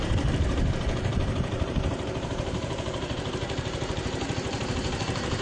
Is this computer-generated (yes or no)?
yes